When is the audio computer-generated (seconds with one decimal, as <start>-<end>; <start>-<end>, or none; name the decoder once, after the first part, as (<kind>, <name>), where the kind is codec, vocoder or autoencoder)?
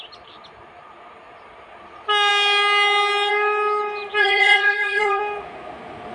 4.2-5.2 (codec, SNAC)